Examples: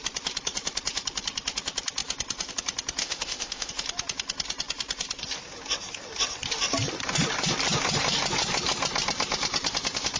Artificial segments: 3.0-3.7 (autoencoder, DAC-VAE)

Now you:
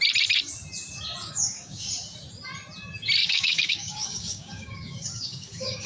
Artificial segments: 1.2-1.9 (codec, DAC); 3.2-5.9

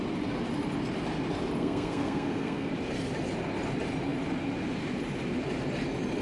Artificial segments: 1.6-2.7 (codec, SNAC)

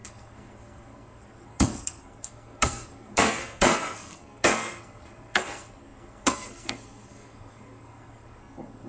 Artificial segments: 0.0-8.9 (codec, SNAC)

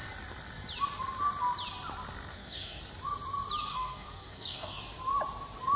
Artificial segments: 2.3-2.8 (codec, SNAC); 3.7-4.8

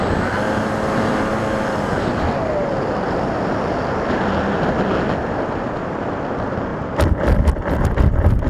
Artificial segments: none